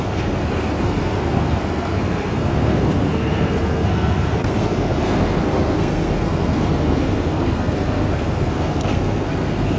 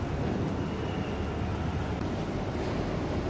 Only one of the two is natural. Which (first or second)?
second